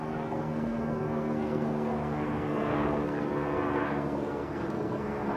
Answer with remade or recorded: remade